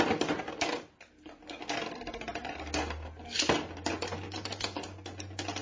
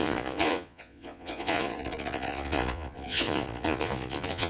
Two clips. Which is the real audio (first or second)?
first